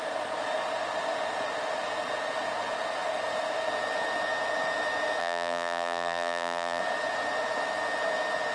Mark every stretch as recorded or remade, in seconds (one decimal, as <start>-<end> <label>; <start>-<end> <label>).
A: 0.0-5.2 recorded; 5.2-6.8 remade; 6.8-8.5 recorded